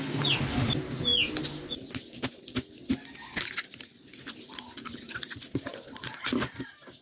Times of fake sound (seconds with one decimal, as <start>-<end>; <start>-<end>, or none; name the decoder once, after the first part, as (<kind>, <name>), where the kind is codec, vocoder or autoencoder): none